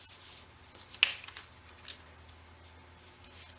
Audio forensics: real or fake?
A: real